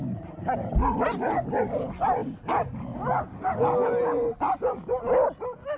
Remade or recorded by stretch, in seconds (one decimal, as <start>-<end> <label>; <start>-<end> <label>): 0.0-5.8 recorded